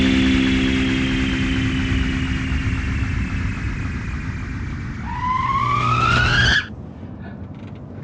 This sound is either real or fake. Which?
real